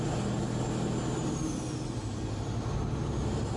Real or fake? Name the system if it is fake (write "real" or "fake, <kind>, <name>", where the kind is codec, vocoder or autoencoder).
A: real